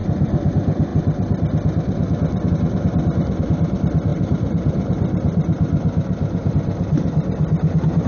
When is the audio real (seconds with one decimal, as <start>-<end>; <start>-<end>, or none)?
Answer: 0.5-4.1; 6.5-8.1